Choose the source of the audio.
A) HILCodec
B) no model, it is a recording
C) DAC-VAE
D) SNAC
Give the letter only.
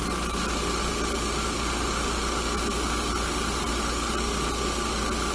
B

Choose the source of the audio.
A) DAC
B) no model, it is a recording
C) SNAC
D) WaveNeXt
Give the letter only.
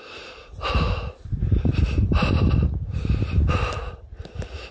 B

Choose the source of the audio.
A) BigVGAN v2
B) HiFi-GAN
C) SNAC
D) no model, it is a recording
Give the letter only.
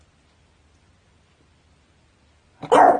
D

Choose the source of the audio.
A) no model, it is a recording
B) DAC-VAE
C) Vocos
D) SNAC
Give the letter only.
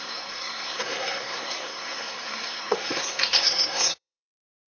D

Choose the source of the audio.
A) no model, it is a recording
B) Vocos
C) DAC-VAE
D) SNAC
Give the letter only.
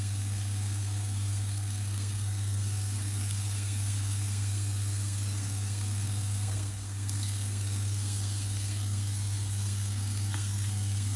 D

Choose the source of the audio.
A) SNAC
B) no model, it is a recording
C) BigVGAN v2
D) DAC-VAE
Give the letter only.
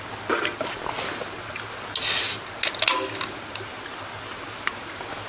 B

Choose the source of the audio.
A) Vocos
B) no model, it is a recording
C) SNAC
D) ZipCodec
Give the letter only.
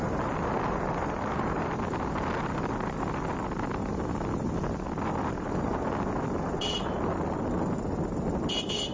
B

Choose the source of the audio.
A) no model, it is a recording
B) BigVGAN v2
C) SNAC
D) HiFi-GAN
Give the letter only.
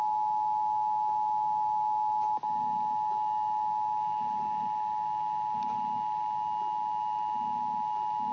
A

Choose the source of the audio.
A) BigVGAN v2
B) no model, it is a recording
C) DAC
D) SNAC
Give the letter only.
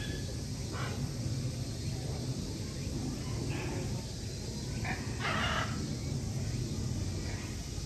B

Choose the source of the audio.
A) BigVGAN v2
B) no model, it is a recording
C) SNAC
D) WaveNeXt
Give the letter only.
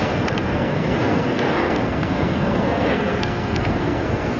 C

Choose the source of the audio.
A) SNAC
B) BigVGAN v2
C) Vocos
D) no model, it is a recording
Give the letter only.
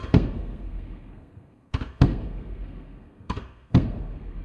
A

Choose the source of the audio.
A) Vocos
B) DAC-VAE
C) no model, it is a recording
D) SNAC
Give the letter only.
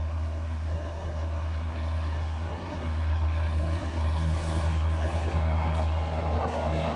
D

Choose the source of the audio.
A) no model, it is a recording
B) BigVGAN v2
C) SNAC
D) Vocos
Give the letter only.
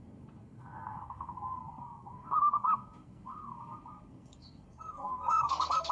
C